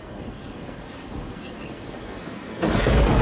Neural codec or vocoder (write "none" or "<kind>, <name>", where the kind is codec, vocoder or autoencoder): codec, SNAC